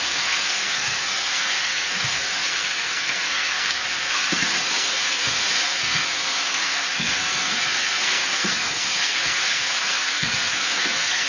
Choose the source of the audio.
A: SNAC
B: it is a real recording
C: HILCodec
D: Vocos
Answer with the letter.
A